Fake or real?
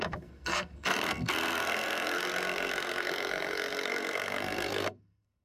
fake